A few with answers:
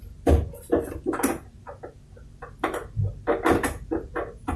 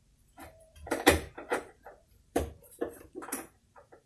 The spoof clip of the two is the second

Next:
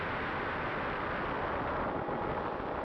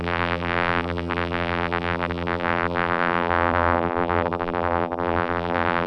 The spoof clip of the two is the second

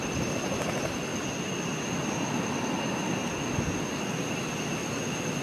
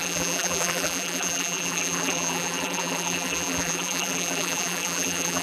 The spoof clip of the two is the second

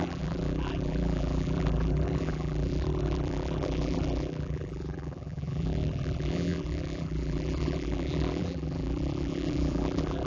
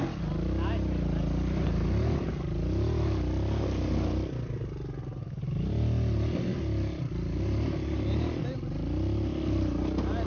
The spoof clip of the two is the first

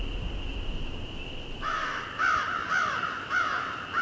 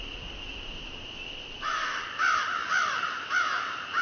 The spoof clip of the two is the second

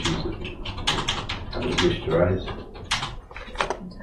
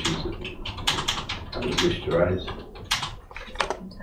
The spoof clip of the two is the second